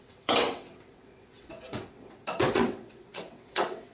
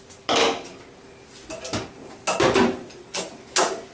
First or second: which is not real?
first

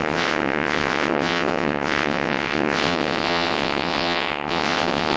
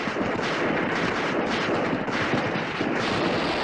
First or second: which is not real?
first